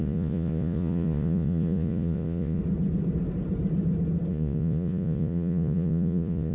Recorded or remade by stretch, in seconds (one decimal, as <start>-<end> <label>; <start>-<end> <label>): 0.0-2.6 remade; 2.6-4.3 recorded; 4.3-6.5 remade